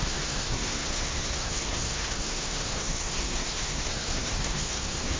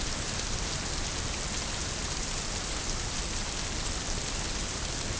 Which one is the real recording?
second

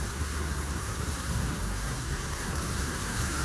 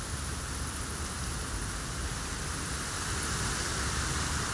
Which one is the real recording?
second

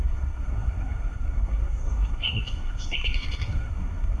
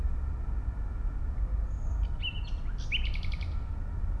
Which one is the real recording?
second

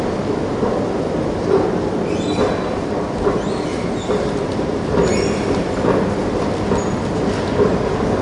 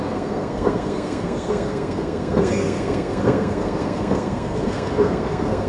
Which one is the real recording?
first